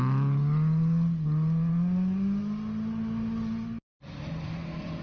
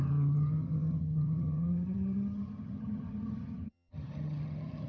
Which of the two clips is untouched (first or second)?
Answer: first